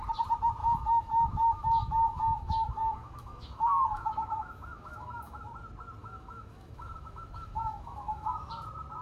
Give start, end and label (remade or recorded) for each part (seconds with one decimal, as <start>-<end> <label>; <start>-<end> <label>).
0.0-0.6 recorded; 0.6-5.4 remade; 5.4-6.0 recorded; 6.0-8.5 remade; 8.5-9.0 recorded